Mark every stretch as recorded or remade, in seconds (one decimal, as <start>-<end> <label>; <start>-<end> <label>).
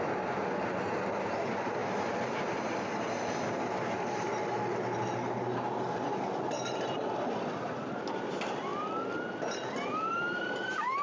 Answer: 0.0-11.0 recorded